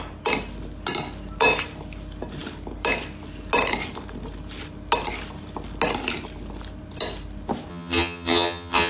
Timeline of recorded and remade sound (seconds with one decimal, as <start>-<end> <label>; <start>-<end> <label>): 0.0-7.7 recorded; 7.7-8.9 remade

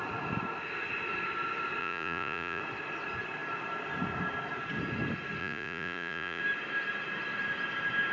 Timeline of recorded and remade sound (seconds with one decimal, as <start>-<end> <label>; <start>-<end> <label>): 0.0-1.8 recorded; 1.8-2.6 remade; 2.6-5.4 recorded; 5.4-6.4 remade; 6.4-8.1 recorded